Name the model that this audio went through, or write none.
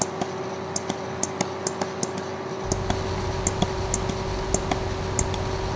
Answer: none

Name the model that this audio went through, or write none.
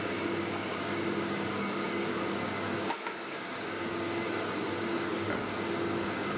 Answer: codec, DAC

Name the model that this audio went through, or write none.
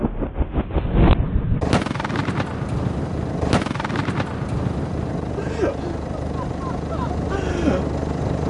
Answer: none